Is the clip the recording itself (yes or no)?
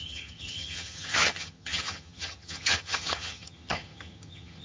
no